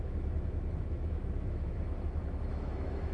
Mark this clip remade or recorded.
remade